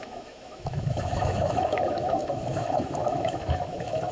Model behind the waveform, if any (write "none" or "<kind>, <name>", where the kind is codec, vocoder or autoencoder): autoencoder, DAC-VAE